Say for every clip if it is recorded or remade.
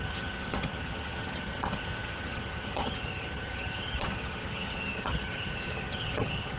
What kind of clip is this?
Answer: remade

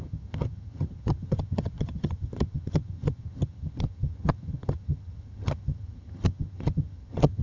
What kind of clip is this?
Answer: remade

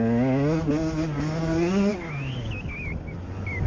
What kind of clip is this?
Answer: recorded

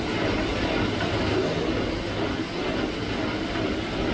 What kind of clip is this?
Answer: recorded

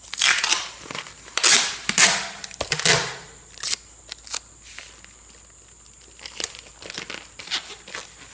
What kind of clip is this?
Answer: recorded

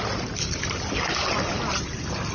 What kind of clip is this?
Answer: recorded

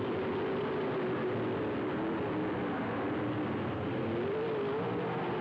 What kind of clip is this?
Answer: recorded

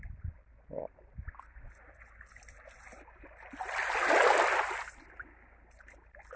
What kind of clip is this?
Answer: recorded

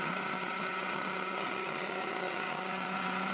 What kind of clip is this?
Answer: remade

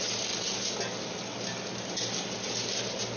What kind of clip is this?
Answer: recorded